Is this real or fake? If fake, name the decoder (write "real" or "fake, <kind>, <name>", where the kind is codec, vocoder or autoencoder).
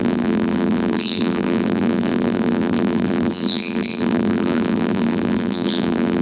fake, vocoder, BigVGAN v2